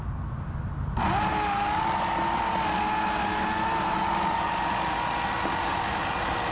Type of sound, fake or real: real